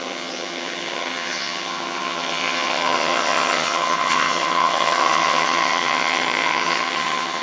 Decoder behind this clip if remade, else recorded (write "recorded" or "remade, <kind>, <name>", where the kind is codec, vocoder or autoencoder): remade, vocoder, HiFi-GAN